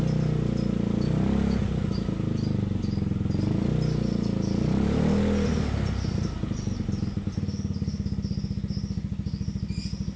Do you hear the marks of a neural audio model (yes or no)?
no